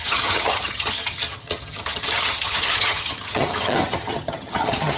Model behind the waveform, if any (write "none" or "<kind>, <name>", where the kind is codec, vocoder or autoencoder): vocoder, HiFi-GAN